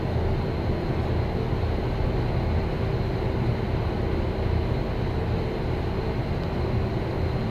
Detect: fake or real real